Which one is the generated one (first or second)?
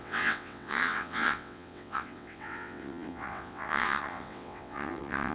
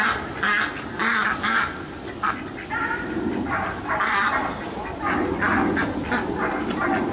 first